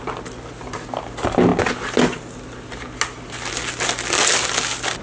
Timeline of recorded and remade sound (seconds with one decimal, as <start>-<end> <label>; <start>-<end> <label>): 0.0-5.0 recorded